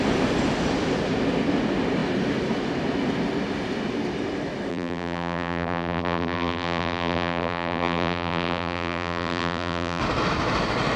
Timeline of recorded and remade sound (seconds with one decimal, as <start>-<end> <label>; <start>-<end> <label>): 0.0-4.7 recorded; 4.7-10.0 remade; 10.0-11.0 recorded